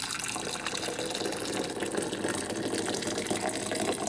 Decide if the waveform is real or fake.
real